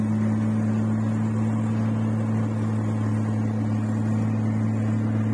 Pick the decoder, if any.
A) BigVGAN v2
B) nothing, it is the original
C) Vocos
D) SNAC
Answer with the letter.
B